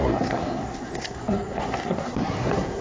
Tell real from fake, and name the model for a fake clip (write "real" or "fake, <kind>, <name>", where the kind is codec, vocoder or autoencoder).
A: fake, codec, SNAC